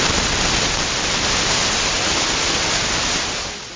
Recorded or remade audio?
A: recorded